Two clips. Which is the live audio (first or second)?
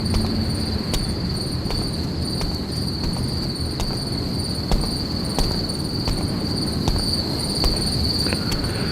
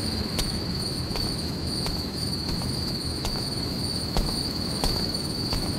first